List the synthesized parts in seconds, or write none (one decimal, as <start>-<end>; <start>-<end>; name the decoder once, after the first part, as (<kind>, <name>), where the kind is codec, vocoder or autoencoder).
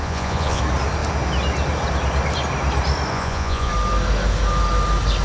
0.0-0.6 (vocoder, Vocos); 3.1-3.7